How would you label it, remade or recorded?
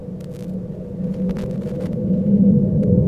recorded